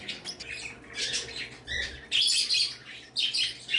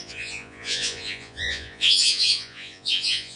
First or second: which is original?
first